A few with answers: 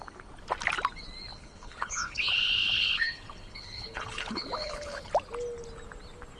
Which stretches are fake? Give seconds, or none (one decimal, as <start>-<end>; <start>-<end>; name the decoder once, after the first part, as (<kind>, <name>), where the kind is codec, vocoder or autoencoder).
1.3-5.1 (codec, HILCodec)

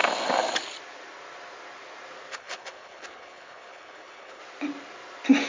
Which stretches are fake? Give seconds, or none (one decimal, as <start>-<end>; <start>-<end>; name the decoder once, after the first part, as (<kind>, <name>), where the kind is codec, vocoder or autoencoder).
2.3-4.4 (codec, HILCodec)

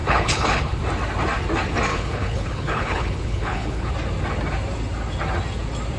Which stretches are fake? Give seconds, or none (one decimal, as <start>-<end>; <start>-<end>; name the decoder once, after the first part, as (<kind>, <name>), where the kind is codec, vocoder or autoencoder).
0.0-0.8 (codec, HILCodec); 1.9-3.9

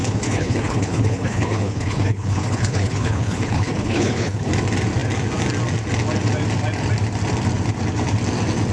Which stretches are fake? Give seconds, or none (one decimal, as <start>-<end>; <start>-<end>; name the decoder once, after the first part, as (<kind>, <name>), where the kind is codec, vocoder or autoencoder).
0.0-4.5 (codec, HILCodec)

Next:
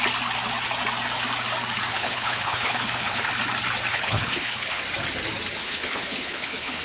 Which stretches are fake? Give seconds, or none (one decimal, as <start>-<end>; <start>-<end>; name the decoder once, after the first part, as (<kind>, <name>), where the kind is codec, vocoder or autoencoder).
1.9-3.3 (codec, HILCodec); 3.9-4.8; 5.6-6.8

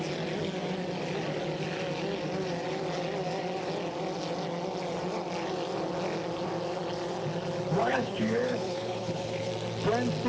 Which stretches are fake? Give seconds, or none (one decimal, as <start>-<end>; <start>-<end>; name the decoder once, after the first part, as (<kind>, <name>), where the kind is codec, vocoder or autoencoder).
7.8-9.5 (codec, HILCodec)

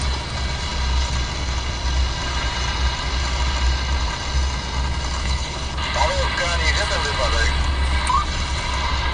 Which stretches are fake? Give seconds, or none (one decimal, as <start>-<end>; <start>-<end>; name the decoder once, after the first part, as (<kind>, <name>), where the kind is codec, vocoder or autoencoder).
5.2-5.7 (codec, HILCodec)

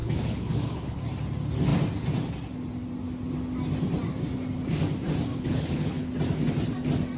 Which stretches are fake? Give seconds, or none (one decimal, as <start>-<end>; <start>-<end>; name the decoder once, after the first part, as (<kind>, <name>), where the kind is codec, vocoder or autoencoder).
0.0-1.0 (codec, HILCodec); 5.3-6.1